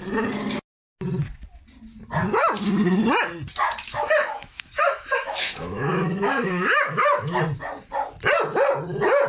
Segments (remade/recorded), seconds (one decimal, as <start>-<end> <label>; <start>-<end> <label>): 0.0-3.9 recorded; 3.9-7.4 remade; 7.4-9.3 recorded